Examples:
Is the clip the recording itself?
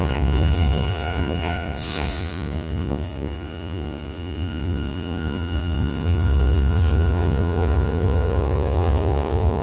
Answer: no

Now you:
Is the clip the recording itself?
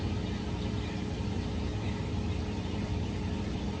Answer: yes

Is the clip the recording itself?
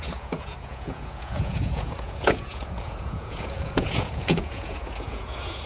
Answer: no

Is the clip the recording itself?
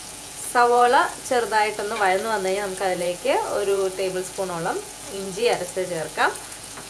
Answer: no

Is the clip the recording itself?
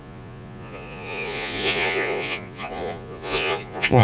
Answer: no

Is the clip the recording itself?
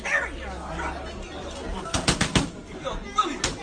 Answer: yes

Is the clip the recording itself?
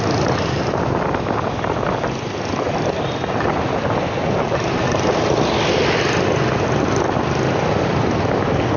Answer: yes